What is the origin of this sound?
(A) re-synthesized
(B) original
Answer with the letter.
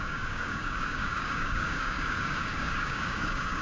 A